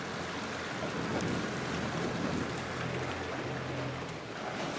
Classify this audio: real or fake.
real